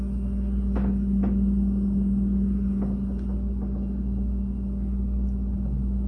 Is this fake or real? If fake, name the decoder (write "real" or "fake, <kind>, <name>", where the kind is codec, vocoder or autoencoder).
real